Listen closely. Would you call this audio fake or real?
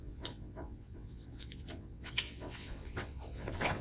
fake